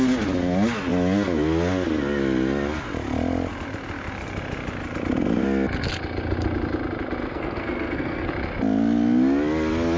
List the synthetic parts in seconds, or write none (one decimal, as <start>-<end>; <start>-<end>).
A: 7.3-8.3